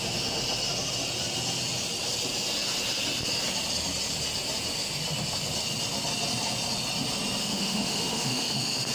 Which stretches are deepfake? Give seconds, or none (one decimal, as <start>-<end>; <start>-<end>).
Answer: 7.4-8.9